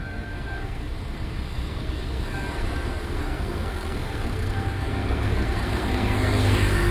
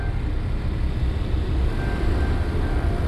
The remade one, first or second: first